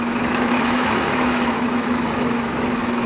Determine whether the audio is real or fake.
fake